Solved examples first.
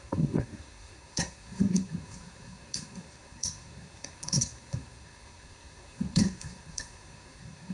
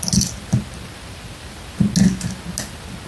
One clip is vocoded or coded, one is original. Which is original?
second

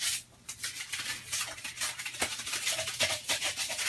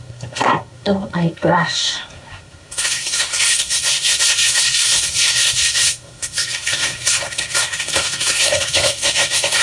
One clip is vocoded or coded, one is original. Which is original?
first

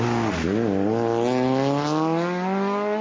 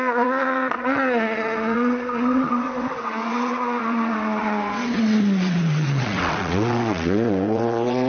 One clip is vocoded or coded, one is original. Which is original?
first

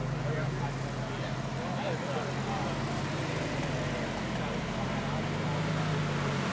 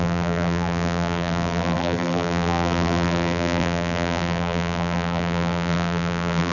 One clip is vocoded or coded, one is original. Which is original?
first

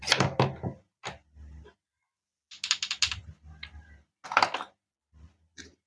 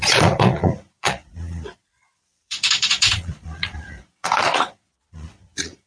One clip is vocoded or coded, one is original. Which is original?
first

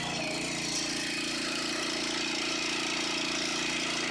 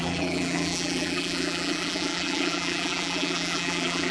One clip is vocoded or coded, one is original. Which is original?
first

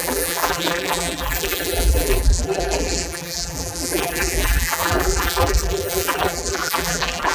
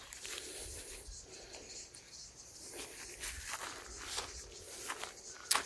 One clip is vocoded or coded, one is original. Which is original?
second